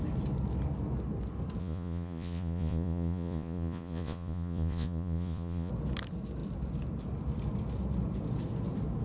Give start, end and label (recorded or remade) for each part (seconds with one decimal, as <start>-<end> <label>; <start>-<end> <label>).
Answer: 0.0-1.6 recorded; 1.6-5.7 remade; 5.7-9.0 recorded